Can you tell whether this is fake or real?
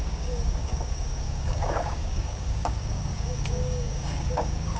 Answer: fake